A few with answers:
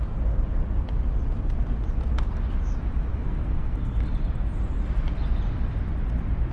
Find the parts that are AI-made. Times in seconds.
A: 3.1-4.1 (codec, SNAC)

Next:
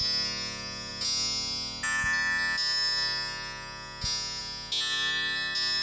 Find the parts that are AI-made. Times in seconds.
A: none